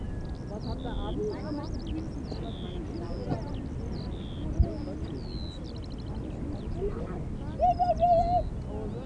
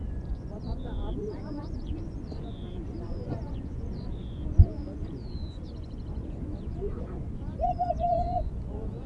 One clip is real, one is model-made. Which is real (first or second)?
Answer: first